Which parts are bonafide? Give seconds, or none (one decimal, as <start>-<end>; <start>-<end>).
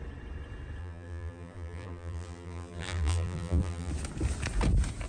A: 0.0-0.8; 3.9-5.1